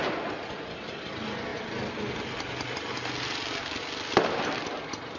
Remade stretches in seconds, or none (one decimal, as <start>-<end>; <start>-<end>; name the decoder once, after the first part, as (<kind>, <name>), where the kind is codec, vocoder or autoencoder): none